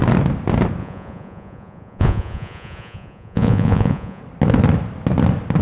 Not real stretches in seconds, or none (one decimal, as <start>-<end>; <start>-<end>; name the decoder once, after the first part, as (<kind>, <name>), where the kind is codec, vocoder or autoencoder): 0.8-4.2 (vocoder, Vocos)